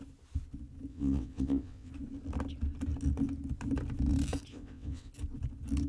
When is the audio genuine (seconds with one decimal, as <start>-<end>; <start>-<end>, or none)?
0.0-0.9; 1.9-4.5; 5.1-5.9